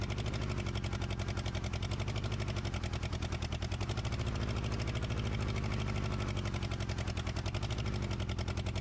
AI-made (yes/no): no